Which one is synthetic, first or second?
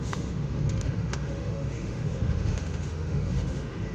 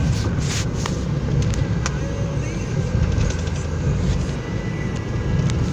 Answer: first